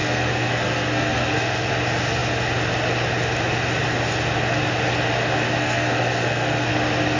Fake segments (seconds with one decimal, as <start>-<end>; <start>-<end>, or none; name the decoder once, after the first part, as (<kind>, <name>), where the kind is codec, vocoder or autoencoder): 0.0-1.7 (codec, SNAC); 5.6-6.7